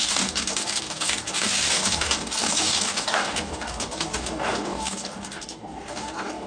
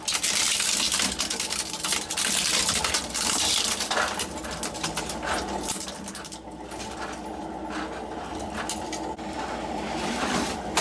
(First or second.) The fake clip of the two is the first